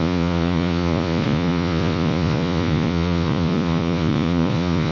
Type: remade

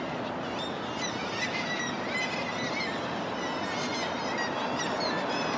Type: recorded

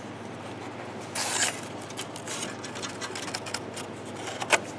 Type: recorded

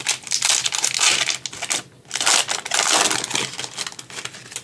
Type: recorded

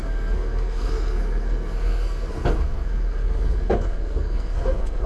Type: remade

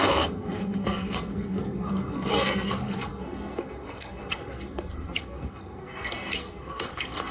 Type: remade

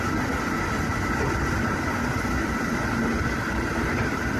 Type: recorded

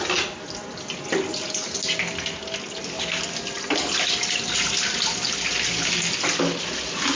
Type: recorded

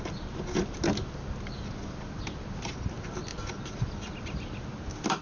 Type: recorded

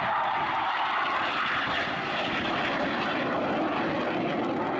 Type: recorded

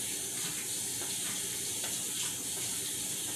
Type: remade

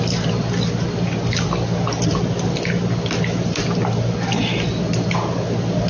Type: recorded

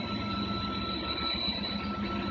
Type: recorded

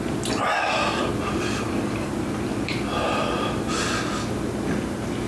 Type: recorded